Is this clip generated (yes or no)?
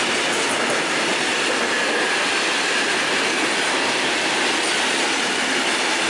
no